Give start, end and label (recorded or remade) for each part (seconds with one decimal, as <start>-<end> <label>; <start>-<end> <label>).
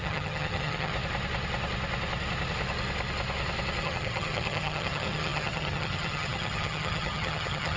0.0-0.9 remade; 0.9-3.8 recorded; 3.8-7.8 remade